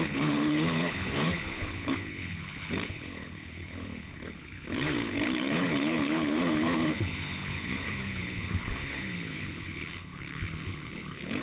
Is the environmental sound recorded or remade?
remade